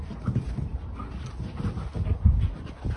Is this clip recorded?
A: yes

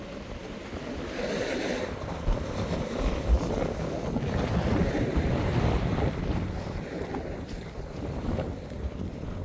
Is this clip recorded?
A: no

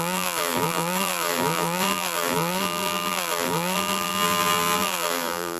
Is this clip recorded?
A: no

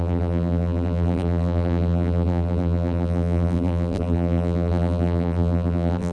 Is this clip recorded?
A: no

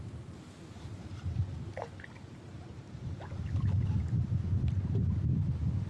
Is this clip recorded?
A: yes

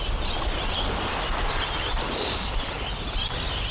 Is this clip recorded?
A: yes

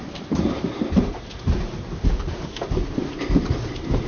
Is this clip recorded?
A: no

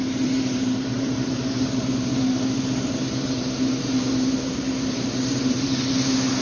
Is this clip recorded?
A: no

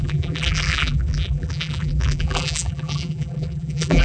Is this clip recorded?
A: no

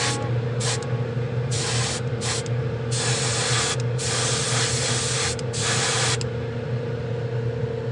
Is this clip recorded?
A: yes